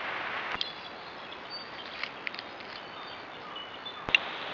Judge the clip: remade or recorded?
recorded